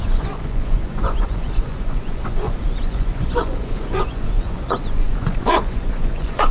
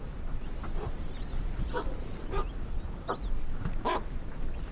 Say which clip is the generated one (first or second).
first